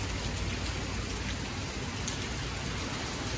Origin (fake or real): real